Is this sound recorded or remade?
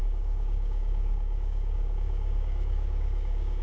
remade